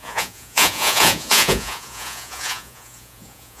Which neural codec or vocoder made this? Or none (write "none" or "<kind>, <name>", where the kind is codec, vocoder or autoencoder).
vocoder, Vocos